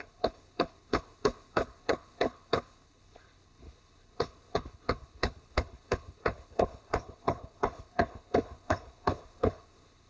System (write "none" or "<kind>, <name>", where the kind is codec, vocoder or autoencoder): codec, HILCodec